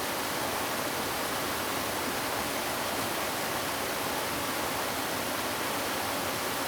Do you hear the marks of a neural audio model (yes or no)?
no